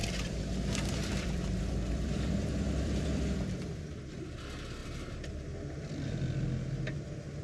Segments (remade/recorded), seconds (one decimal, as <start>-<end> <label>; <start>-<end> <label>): 0.0-4.2 remade; 4.2-4.8 recorded; 4.8-5.5 remade; 5.5-7.4 recorded